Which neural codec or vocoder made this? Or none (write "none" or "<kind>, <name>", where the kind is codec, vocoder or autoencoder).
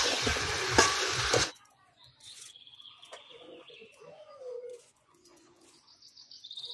vocoder, Vocos